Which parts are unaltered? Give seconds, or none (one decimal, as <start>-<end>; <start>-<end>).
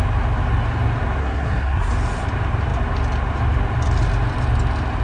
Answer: 0.0-1.2; 1.9-5.0